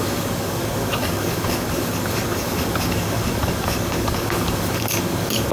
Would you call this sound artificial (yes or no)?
yes